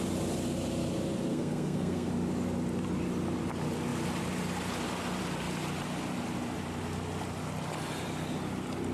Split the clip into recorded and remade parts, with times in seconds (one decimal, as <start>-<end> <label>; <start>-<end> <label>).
0.0-1.3 recorded; 1.3-2.1 remade; 2.1-8.9 recorded